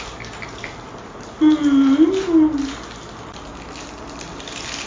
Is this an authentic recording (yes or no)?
yes